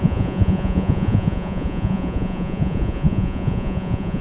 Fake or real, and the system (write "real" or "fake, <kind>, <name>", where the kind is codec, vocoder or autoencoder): fake, vocoder, Vocos